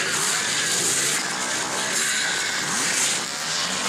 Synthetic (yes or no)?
no